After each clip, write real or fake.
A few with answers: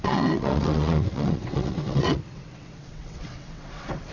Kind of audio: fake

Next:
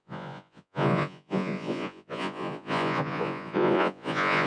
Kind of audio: fake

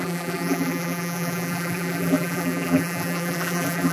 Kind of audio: fake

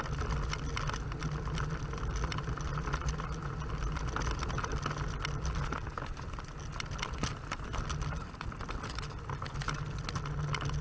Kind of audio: real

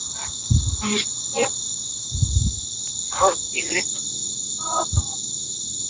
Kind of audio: real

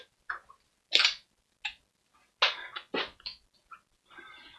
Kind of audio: real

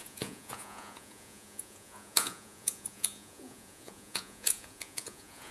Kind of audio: fake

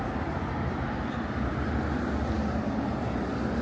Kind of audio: real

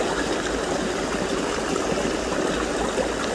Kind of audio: real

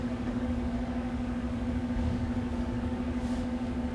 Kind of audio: fake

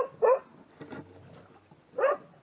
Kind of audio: real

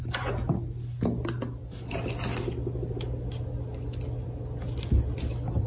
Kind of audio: real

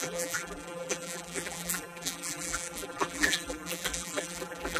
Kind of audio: fake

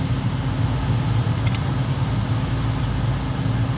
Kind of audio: real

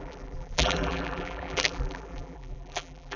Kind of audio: fake